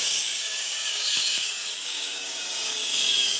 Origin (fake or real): fake